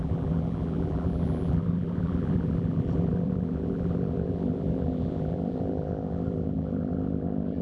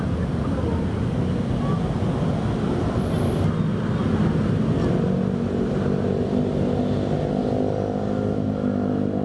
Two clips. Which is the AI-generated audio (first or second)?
first